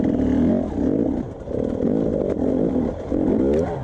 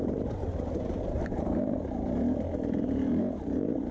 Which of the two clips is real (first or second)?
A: first